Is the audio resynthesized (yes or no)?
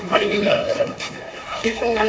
yes